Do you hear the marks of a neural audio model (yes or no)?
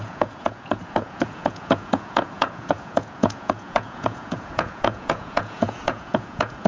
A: yes